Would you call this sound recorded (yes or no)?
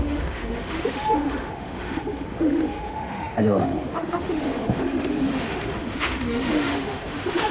no